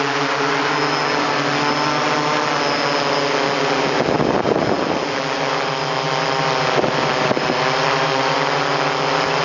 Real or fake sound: real